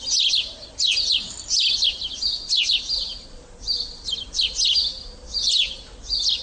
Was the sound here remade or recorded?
recorded